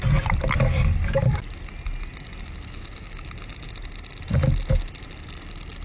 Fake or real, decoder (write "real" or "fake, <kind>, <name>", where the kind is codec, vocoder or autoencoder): real